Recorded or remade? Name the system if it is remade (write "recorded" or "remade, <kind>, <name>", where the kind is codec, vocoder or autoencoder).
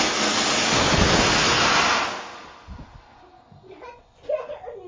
recorded